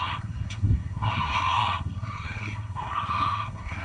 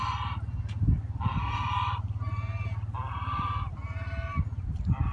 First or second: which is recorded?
second